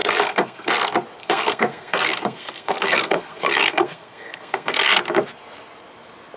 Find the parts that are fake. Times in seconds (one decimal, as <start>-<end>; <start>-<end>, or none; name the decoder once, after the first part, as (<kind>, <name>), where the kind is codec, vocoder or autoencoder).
0.0-0.7 (codec, SNAC); 1.2-5.0